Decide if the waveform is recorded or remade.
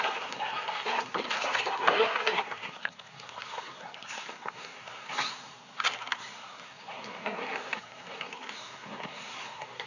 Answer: remade